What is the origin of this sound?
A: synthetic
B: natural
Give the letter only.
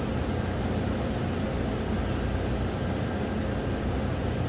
B